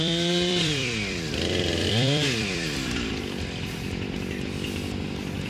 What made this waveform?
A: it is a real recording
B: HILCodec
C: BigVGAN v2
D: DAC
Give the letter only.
C